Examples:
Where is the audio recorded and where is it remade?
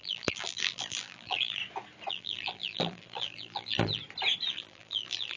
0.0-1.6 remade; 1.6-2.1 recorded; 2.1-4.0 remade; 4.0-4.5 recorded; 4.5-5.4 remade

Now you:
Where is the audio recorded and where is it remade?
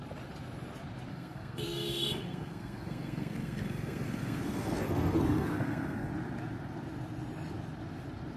0.0-1.1 recorded; 1.1-6.1 remade; 6.1-8.4 recorded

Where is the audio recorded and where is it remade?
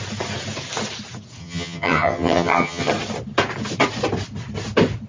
0.0-1.4 recorded; 1.4-2.9 remade; 2.9-5.1 recorded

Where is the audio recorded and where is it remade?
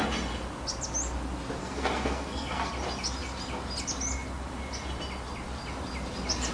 0.0-1.6 recorded; 1.6-2.7 remade; 2.7-6.5 recorded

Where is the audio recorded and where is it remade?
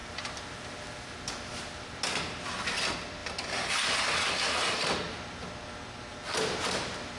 0.0-7.2 recorded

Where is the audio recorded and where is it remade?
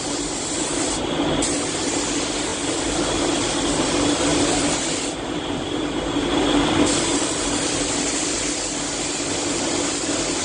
0.0-2.5 recorded; 2.5-3.2 remade; 3.2-4.3 recorded; 4.3-8.6 remade; 8.6-10.4 recorded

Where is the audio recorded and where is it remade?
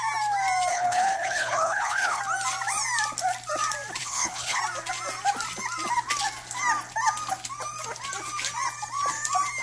0.0-0.7 recorded; 0.7-2.2 remade; 2.2-4.0 recorded; 4.0-4.6 remade; 4.6-9.6 recorded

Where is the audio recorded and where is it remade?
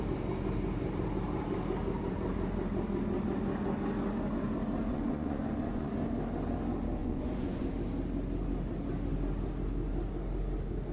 0.0-4.9 recorded; 4.9-5.9 remade; 5.9-7.0 recorded; 7.0-7.7 remade; 7.7-10.9 recorded